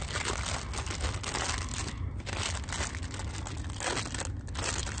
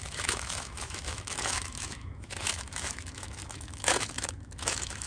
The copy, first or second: second